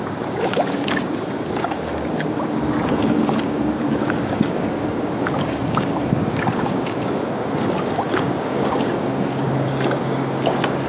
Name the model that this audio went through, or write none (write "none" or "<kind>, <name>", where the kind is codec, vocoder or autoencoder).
codec, DAC